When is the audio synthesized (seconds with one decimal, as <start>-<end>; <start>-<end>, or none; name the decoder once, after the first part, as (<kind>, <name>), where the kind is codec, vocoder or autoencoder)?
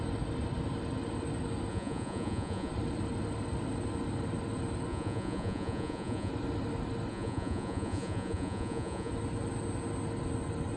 1.7-2.7 (vocoder, Vocos); 4.9-6.3; 7.1-9.1